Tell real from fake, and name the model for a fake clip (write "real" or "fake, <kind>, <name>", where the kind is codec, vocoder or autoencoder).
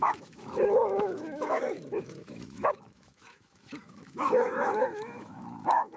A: fake, autoencoder, DAC-VAE